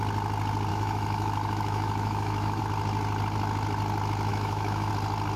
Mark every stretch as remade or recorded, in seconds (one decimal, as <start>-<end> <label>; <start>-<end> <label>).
0.0-0.7 recorded; 0.7-2.6 remade; 2.6-4.3 recorded; 4.3-4.9 remade; 4.9-5.4 recorded